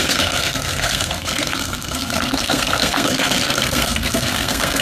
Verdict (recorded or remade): remade